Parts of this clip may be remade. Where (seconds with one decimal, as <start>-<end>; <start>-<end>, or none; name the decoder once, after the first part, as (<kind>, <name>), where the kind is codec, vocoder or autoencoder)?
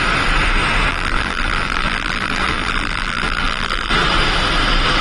0.9-3.9 (vocoder, BigVGAN v2)